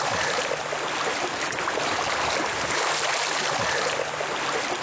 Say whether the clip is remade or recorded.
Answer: recorded